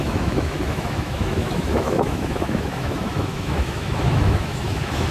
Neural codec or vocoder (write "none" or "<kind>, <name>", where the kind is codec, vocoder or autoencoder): autoencoder, DAC-VAE